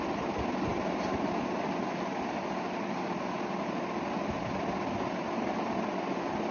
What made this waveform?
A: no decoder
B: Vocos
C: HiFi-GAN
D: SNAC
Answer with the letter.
A